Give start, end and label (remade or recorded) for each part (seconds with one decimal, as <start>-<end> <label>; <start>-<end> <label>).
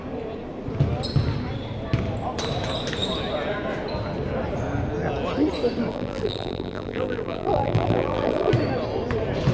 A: 0.0-5.9 recorded; 5.9-8.5 remade; 8.5-9.5 recorded